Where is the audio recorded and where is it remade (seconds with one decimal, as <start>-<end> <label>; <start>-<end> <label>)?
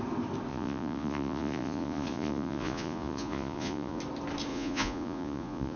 0.0-0.5 recorded; 0.5-4.0 remade; 4.0-4.5 recorded; 4.5-5.8 remade